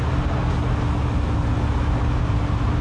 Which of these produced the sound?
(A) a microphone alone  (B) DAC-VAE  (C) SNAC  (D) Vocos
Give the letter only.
A